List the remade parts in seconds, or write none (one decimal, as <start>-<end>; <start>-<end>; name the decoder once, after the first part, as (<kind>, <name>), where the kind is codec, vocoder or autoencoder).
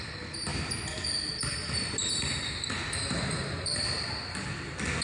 none